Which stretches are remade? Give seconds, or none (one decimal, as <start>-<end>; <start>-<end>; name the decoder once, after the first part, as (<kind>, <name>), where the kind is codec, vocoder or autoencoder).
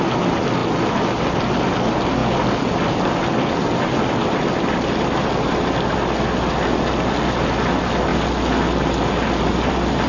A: none